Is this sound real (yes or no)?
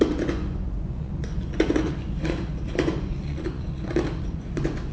no